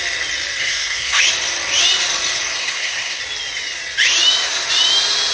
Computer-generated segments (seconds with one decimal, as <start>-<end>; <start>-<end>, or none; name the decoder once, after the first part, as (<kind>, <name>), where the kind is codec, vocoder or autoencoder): 0.6-1.2 (codec, SNAC); 2.6-3.2